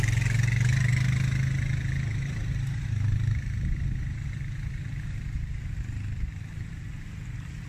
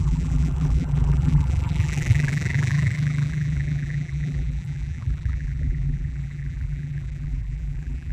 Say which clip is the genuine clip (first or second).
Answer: first